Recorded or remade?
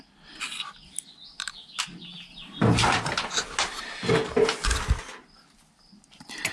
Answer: recorded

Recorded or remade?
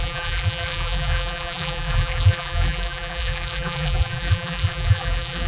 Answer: remade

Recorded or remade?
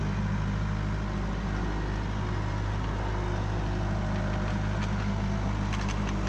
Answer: recorded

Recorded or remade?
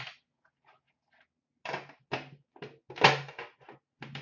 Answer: recorded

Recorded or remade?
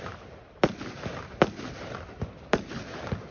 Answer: recorded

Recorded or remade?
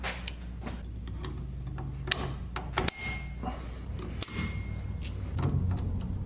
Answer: recorded